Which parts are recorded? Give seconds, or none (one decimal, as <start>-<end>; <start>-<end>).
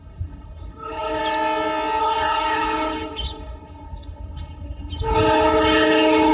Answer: 1.2-2.0